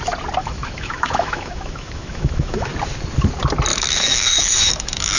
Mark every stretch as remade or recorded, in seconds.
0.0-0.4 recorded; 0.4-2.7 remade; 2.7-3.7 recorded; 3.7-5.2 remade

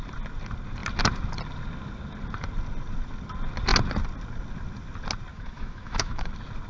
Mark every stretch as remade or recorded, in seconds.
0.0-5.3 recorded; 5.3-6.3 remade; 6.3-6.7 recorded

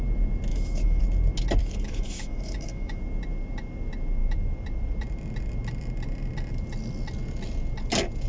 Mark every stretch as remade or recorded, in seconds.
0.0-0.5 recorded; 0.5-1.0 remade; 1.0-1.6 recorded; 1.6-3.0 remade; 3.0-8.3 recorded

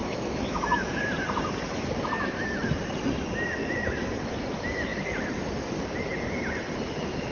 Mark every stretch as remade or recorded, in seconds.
0.0-1.0 remade; 1.0-3.6 recorded; 3.6-4.1 remade; 4.1-7.3 recorded

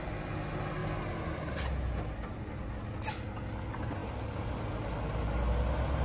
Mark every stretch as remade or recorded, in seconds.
0.0-6.0 recorded

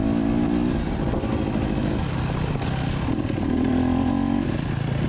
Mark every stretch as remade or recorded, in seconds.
0.0-5.1 recorded

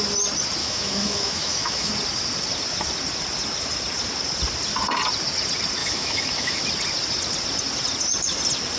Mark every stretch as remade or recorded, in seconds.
0.0-0.6 recorded; 0.6-1.9 remade; 1.9-5.8 recorded; 5.8-6.6 remade; 6.6-8.8 recorded

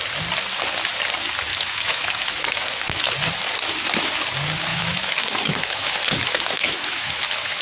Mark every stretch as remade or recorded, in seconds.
0.0-1.5 recorded; 1.5-3.1 remade; 3.1-4.7 recorded; 4.7-7.6 remade